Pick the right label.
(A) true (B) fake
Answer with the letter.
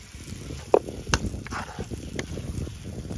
A